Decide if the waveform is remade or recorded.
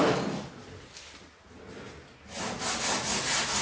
recorded